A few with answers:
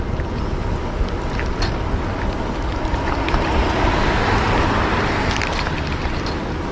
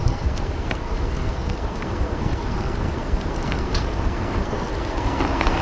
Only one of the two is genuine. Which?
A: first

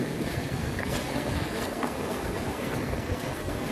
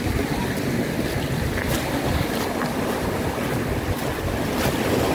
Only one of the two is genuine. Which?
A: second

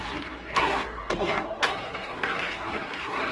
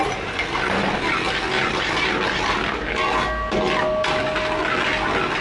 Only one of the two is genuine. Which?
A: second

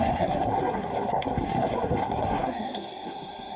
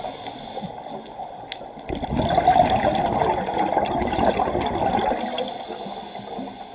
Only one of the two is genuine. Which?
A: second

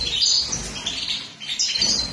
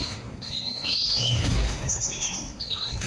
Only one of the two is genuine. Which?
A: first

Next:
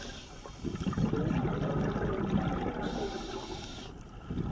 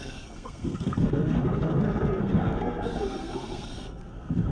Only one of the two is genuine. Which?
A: first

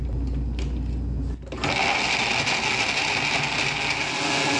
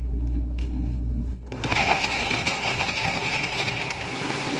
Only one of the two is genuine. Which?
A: first